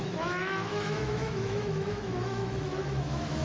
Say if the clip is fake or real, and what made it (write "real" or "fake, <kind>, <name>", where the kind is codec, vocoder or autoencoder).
fake, autoencoder, DAC-VAE